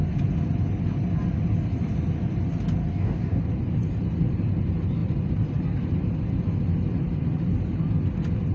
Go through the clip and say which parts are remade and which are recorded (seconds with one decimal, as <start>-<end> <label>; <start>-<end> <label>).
0.0-2.9 recorded; 2.9-3.4 remade; 3.4-8.5 recorded